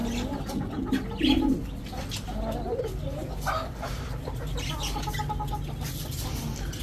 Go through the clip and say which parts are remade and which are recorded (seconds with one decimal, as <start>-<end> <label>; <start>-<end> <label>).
0.0-6.8 recorded